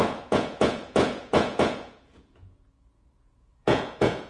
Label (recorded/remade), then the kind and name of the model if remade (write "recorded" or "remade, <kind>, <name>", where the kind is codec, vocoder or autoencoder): remade, vocoder, Vocos